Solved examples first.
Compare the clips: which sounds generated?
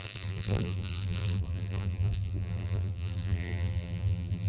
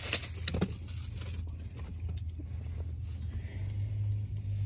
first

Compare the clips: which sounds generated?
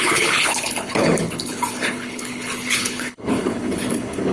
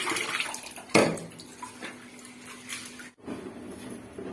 first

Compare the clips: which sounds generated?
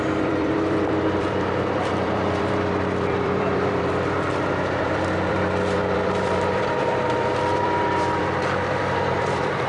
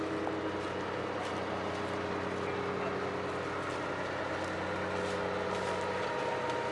first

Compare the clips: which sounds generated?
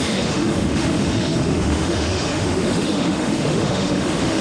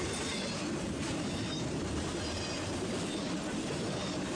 first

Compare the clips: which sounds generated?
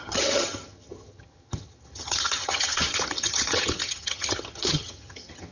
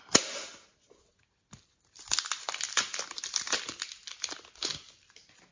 first